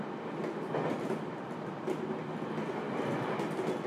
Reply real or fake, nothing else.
real